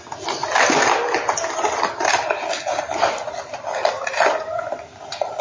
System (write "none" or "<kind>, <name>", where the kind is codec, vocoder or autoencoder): none